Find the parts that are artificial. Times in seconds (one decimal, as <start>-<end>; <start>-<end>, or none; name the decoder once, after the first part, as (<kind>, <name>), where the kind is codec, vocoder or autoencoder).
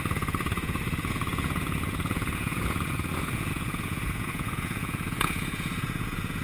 0.0-6.4 (vocoder, Vocos)